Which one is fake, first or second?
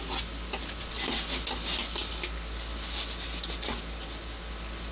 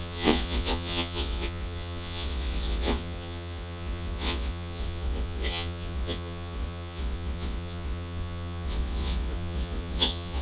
second